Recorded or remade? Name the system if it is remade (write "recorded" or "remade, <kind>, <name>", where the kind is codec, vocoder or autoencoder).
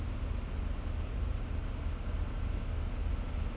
recorded